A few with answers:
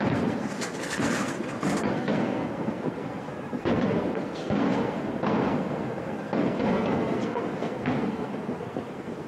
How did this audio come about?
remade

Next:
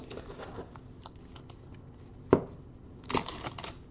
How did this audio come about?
recorded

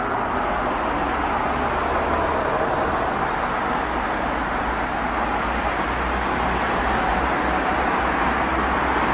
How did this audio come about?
recorded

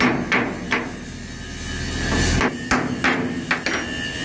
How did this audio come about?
recorded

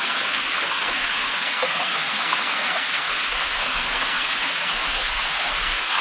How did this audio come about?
remade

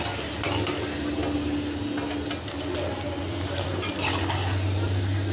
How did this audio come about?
recorded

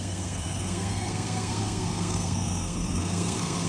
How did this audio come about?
remade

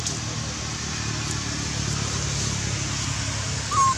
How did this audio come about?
recorded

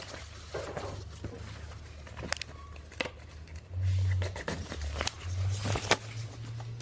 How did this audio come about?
recorded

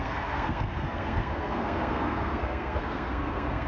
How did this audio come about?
remade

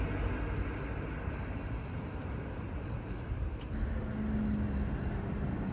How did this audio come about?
recorded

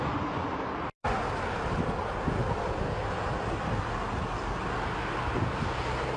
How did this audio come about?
recorded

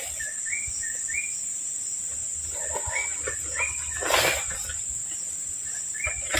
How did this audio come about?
recorded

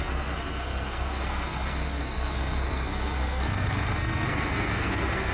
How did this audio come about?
remade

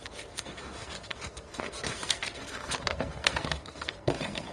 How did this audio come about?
remade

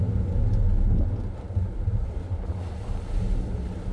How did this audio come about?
recorded